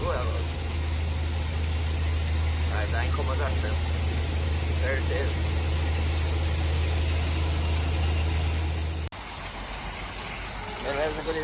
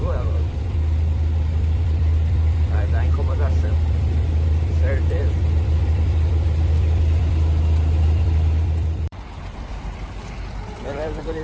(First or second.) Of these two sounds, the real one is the first